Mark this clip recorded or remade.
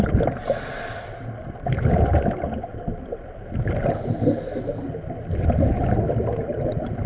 recorded